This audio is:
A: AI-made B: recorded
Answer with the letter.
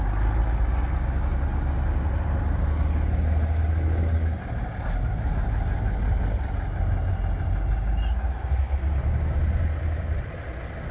B